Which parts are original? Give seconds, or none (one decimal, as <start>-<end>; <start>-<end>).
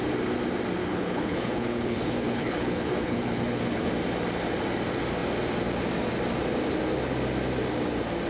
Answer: 0.0-0.8; 3.9-8.3